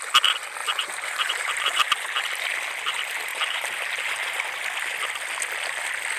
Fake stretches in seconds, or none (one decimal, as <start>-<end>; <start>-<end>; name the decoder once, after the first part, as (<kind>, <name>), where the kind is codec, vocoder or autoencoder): 0.6-1.8 (vocoder, BigVGAN v2); 3.3-4.4